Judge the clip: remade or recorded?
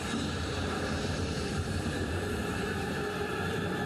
remade